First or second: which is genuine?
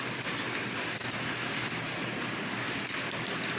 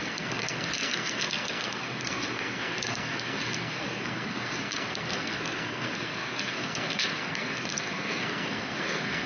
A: first